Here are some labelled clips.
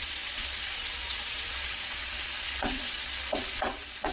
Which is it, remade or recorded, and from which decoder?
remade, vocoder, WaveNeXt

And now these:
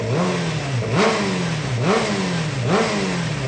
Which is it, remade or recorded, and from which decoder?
recorded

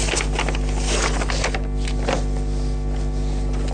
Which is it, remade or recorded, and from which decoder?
recorded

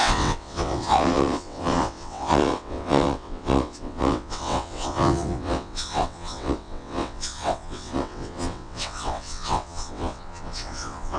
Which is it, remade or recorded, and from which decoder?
remade, vocoder, WaveNeXt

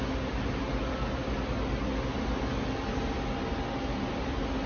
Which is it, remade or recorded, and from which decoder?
recorded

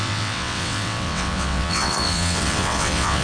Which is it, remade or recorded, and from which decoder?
remade, vocoder, WaveNeXt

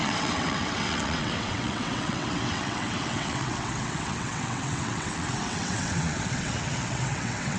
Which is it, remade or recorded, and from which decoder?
remade, vocoder, WaveNeXt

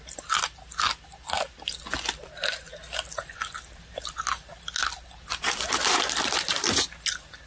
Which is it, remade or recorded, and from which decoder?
recorded